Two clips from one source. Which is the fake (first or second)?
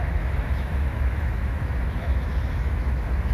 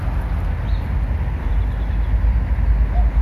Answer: first